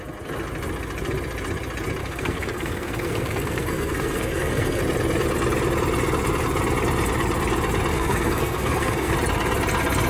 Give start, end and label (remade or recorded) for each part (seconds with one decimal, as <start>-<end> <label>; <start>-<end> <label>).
0.0-2.0 recorded; 2.0-4.8 remade; 4.8-7.9 recorded; 7.9-9.1 remade; 9.1-10.1 recorded